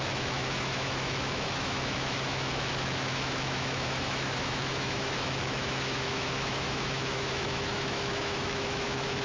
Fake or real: fake